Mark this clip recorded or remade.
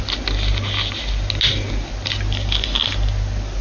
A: recorded